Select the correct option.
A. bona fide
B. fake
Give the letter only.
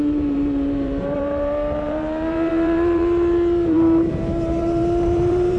B